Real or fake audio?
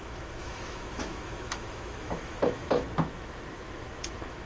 fake